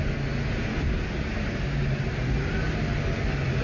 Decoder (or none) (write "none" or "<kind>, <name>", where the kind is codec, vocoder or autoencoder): none